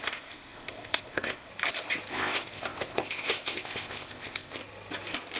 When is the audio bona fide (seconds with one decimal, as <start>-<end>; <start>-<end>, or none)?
1.5-2.1; 4.6-5.4

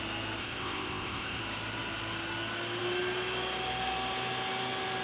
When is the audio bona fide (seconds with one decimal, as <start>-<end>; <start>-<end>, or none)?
0.0-0.4; 1.4-5.0

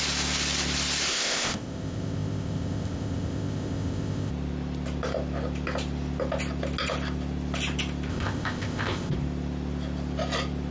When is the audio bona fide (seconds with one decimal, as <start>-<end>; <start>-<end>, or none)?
0.0-1.1; 4.3-8.1; 9.1-10.7

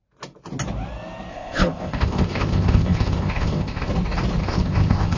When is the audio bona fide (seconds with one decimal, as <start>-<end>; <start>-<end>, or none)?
0.0-1.3; 3.9-4.4

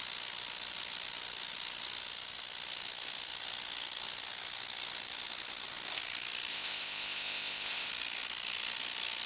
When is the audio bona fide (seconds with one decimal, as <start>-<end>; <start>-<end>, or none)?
0.0-6.5; 7.9-9.3

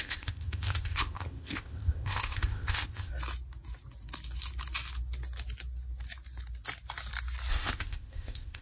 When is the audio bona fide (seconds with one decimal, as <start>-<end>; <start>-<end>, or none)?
3.1-7.5

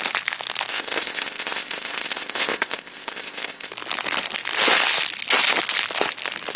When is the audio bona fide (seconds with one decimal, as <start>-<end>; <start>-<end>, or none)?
0.0-0.7; 3.7-6.6

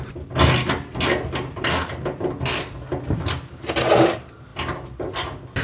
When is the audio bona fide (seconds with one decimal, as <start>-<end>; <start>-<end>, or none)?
0.0-5.6